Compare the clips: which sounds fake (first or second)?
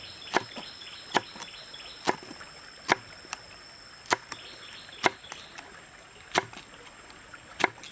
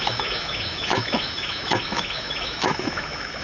second